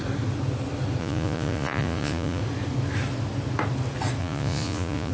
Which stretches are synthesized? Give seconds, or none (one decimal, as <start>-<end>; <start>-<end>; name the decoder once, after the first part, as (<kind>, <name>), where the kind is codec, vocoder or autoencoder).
1.0-2.4 (vocoder, Vocos); 4.2-5.1

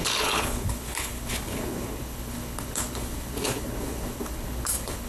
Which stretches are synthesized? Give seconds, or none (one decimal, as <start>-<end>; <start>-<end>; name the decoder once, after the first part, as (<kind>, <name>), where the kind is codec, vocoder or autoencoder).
0.0-5.1 (codec, HILCodec)

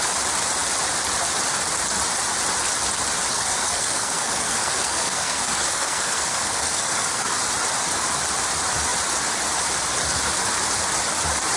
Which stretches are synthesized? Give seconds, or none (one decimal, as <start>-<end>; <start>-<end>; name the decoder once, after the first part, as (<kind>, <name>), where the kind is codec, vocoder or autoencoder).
3.3-7.4 (codec, SNAC)

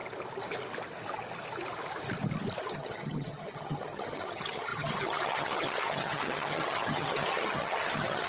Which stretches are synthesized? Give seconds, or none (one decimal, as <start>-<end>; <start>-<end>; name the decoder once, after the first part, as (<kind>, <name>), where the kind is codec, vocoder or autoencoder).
2.7-8.3 (vocoder, HiFi-GAN)

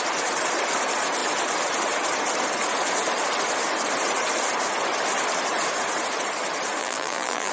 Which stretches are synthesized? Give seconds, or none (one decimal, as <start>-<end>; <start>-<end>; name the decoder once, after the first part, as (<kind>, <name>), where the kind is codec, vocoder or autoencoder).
6.8-7.5 (vocoder, BigVGAN v2)

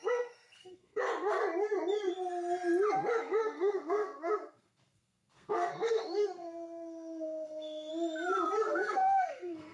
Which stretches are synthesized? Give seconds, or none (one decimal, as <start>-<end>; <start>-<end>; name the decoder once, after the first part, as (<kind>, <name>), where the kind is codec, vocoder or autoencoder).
0.0-1.4 (codec, SNAC); 3.1-7.9; 8.6-9.7

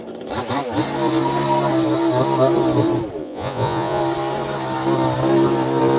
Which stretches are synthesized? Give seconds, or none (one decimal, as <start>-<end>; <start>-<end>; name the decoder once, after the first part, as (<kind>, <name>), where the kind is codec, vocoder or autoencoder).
3.2-4.0 (vocoder, Vocos)